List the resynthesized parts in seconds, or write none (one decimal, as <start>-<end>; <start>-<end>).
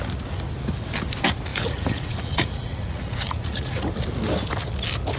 1.5-3.8